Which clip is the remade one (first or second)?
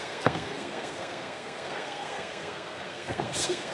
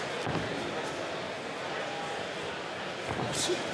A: first